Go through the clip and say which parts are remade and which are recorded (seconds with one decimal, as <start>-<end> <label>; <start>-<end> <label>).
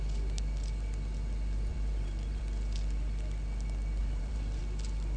0.0-1.7 recorded; 1.7-2.4 remade; 2.4-4.0 recorded; 4.0-4.6 remade; 4.6-5.2 recorded